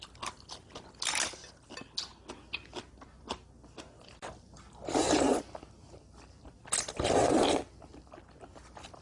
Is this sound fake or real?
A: real